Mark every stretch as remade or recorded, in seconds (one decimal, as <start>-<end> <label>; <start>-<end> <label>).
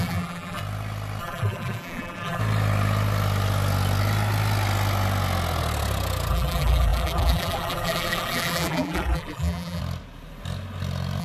0.0-0.6 remade; 0.6-1.2 recorded; 1.2-2.4 remade; 2.4-6.3 recorded; 6.3-9.8 remade; 9.8-11.2 recorded